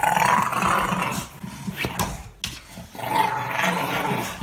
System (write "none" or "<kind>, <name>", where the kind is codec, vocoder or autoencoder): none